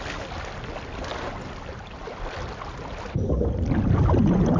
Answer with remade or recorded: recorded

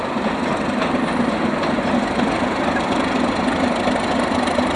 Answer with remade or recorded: recorded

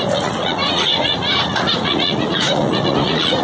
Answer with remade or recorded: remade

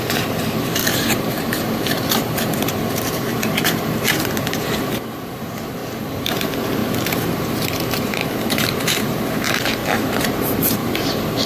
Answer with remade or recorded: remade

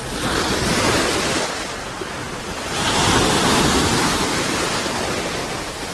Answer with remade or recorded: recorded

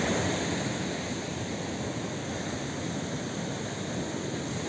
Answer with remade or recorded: recorded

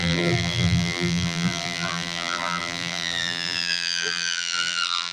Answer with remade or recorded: remade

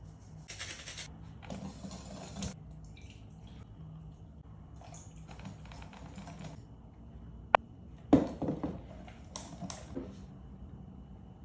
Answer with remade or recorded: recorded